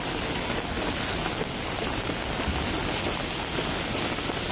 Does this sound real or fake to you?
real